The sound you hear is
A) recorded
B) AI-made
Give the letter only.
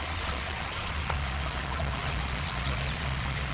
B